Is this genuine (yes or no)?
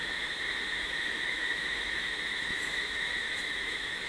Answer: no